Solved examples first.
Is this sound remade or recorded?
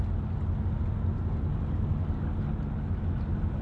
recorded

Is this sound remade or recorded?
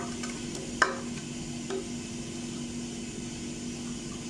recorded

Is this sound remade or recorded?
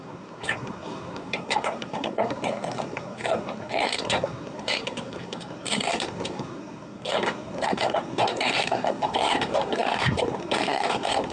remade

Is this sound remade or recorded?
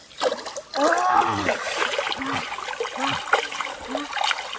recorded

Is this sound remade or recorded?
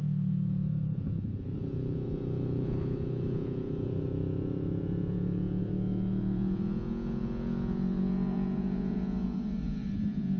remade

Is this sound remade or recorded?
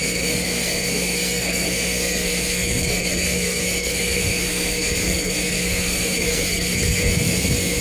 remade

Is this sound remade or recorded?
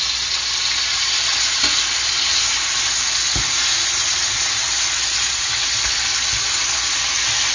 recorded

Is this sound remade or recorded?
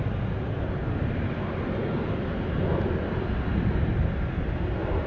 recorded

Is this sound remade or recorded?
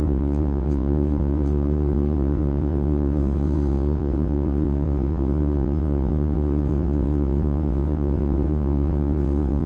remade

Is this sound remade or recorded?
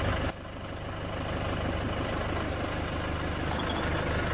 recorded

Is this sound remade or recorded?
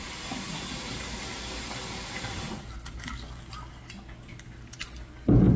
recorded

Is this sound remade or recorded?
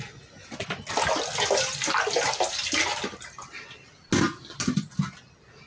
recorded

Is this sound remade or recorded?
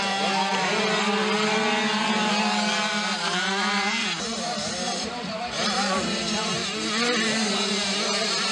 remade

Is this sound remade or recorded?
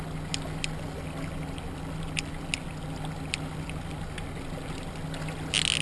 recorded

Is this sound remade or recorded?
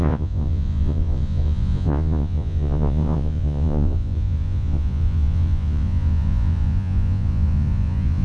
remade